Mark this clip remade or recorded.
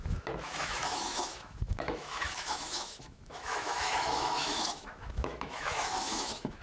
remade